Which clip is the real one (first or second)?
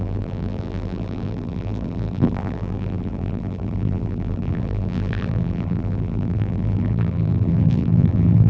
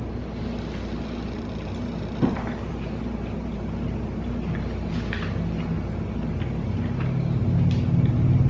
second